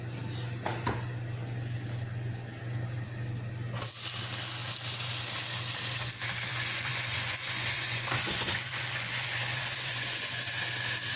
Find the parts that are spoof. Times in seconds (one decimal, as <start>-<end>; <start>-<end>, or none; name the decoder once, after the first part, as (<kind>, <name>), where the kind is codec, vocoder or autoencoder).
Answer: 6.5-10.5 (vocoder, Vocos)